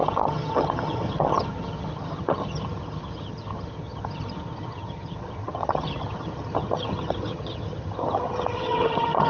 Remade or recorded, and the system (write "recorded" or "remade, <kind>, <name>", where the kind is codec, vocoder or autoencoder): remade, vocoder, HiFi-GAN